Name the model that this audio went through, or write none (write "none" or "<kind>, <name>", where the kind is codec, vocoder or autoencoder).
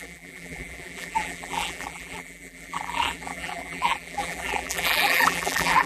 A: vocoder, BigVGAN v2